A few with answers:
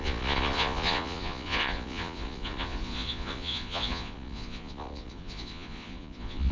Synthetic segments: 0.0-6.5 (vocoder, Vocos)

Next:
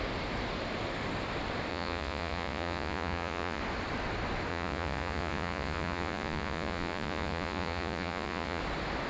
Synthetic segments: 1.7-3.6 (vocoder, Vocos); 4.5-8.6

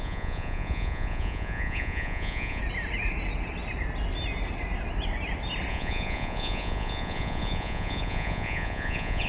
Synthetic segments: 0.0-2.6 (vocoder, Vocos); 5.7-9.3

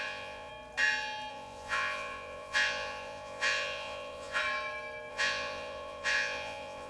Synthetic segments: 0.0-0.5 (vocoder, Vocos); 1.3-4.4; 5.1-6.9

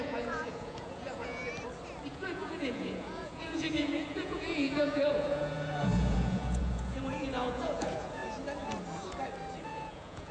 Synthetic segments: 0.0-1.4 (vocoder, Vocos); 2.1-8.2; 9.6-10.3

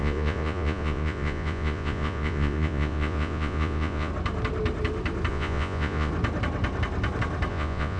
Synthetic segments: 0.0-4.1 (vocoder, Vocos); 5.3-6.1; 7.5-8.0